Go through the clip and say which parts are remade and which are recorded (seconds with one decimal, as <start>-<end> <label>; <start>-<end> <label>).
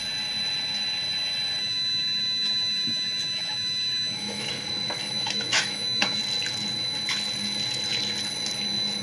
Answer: 0.0-1.6 recorded; 1.6-4.5 remade; 4.5-5.0 recorded; 5.0-6.2 remade; 6.2-9.0 recorded